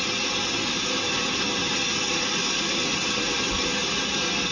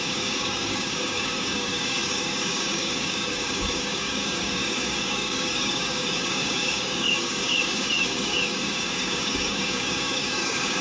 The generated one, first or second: second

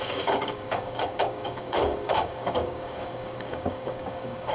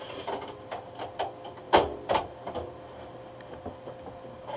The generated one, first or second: first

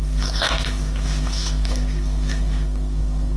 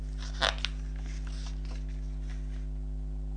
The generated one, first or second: first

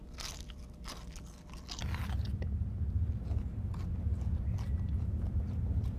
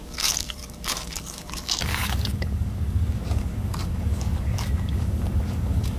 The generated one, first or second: second